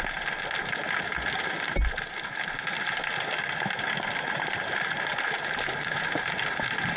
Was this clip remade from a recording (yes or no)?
no